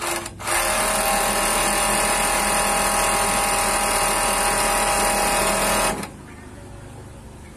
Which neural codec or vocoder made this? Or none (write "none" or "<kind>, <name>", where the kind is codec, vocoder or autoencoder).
none